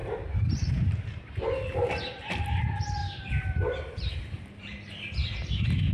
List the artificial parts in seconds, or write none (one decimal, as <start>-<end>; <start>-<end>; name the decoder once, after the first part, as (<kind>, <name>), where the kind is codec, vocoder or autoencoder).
0.0-2.4 (vocoder, BigVGAN v2); 3.0-4.7